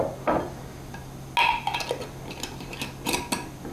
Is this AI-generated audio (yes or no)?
no